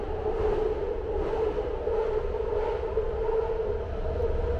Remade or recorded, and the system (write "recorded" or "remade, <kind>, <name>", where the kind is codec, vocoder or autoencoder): recorded